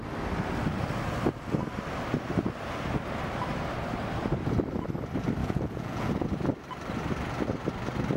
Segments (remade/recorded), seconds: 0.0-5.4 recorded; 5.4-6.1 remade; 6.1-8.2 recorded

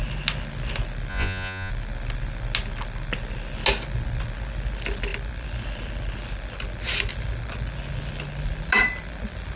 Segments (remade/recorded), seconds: 0.0-1.1 recorded; 1.1-1.7 remade; 1.7-9.6 recorded